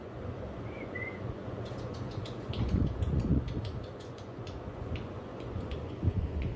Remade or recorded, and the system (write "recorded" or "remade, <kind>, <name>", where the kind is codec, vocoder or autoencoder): remade, vocoder, Vocos